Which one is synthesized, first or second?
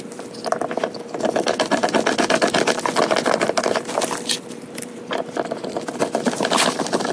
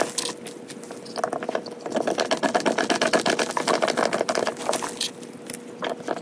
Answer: first